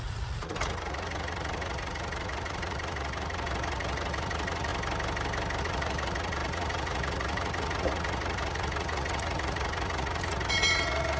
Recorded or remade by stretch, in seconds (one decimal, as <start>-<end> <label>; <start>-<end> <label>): 0.0-4.7 remade; 4.7-5.6 recorded; 5.6-11.2 remade